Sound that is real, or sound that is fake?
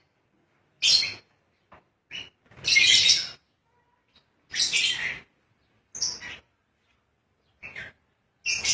real